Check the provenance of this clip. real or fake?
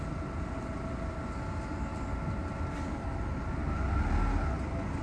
real